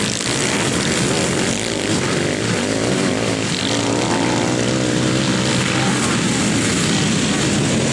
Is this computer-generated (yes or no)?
no